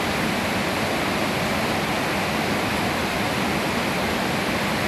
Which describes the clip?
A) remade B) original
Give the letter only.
B